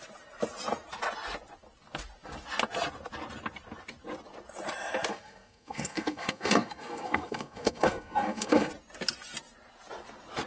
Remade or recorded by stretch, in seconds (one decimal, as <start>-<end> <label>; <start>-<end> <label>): 0.0-5.1 recorded; 5.1-8.7 remade; 8.7-10.5 recorded